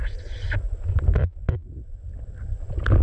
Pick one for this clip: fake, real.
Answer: real